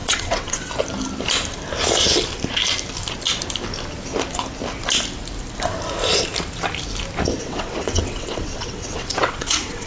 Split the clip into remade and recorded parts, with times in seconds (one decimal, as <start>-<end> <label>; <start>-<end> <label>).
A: 0.0-0.7 remade; 0.7-7.4 recorded; 7.4-9.9 remade